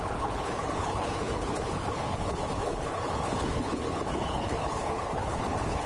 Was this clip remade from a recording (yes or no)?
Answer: yes